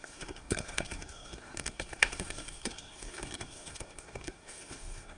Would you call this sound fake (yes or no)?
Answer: yes